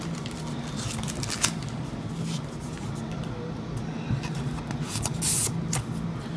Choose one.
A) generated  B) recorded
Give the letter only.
B